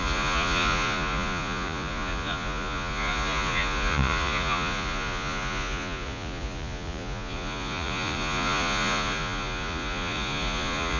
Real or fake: fake